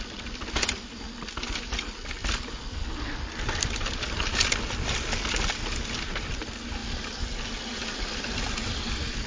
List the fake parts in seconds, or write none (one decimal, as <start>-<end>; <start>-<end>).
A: none